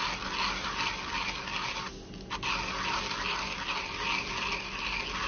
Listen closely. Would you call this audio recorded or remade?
recorded